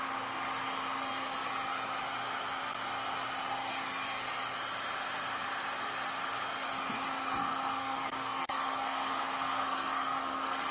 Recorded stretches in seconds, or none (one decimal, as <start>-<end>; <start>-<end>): 0.0-7.4